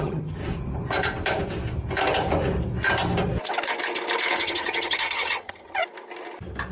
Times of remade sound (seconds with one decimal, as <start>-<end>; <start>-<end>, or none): 0.0-0.4; 4.4-5.8